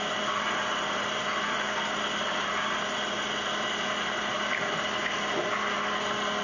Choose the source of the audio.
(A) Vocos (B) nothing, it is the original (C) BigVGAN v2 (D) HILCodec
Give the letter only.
B